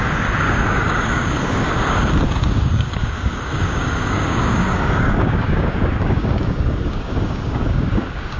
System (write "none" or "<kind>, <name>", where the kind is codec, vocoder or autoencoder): codec, DAC